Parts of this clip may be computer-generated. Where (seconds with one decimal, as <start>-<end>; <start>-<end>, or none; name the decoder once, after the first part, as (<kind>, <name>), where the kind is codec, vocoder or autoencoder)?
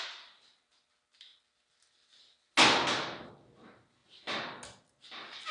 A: none